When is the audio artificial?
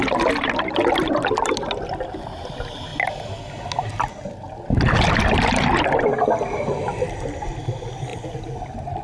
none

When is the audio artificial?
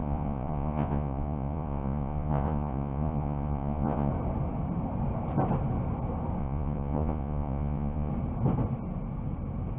0.0-4.1 (vocoder, Vocos); 6.4-8.1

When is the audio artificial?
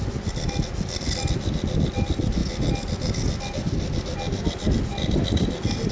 none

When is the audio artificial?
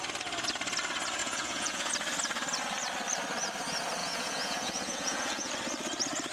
1.2-1.9 (vocoder, Vocos); 4.0-5.5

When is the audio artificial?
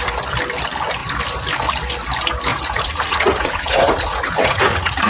2.5-5.1 (vocoder, Vocos)